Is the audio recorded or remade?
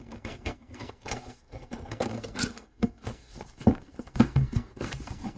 remade